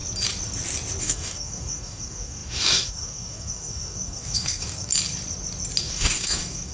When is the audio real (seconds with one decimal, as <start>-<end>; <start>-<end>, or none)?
0.0-1.0; 4.9-5.8